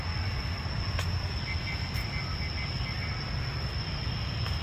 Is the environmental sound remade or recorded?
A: recorded